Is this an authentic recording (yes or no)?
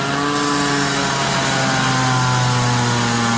yes